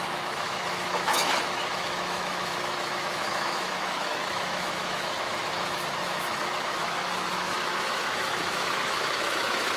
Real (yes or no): no